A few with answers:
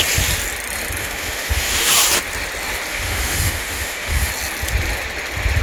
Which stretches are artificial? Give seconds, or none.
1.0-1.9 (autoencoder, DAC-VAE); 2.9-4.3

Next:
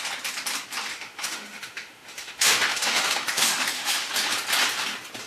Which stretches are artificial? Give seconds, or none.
0.9-4.1 (autoencoder, DAC-VAE)

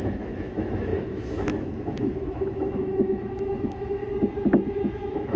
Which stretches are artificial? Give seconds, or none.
0.0-4.0 (autoencoder, DAC-VAE); 4.7-5.4